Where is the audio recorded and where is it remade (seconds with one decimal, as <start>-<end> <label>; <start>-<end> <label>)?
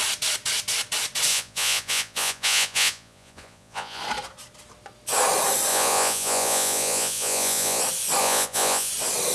0.0-1.3 recorded; 1.3-4.0 remade; 4.0-5.7 recorded; 5.7-7.8 remade; 7.8-8.2 recorded; 8.2-8.9 remade; 8.9-9.3 recorded